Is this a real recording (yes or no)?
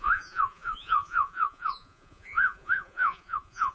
no